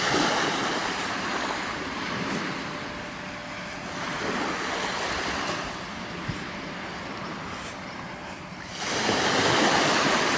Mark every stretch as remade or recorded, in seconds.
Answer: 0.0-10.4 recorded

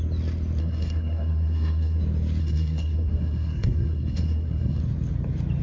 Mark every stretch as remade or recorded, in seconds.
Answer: 0.0-0.6 recorded; 0.6-2.0 remade; 2.0-2.4 recorded; 2.4-4.8 remade; 4.8-5.6 recorded

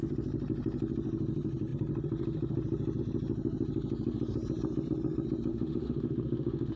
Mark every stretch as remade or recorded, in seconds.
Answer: 0.0-5.5 recorded; 5.5-6.8 remade

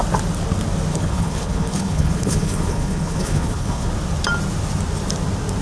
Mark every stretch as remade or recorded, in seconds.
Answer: 0.0-0.9 recorded; 0.9-3.9 remade; 3.9-5.6 recorded

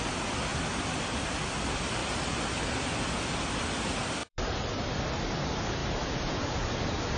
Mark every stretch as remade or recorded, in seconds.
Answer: 0.0-0.5 recorded; 0.5-1.6 remade; 1.6-2.0 recorded; 2.0-2.8 remade; 2.8-4.2 recorded; 4.2-5.0 remade; 5.0-7.2 recorded

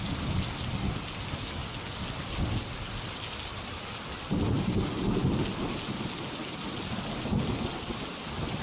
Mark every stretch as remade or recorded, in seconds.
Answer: 0.0-8.6 recorded

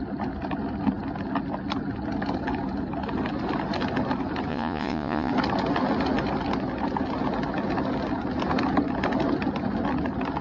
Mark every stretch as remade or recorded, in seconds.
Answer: 0.0-4.5 recorded; 4.5-5.3 remade; 5.3-10.4 recorded

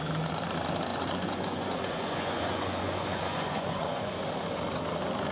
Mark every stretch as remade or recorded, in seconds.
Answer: 0.0-0.9 recorded; 0.9-4.1 remade; 4.1-5.3 recorded